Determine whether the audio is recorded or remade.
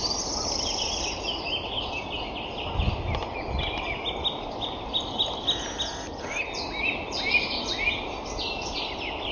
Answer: recorded